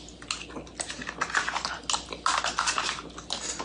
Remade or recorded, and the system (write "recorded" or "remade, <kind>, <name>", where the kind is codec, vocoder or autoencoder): recorded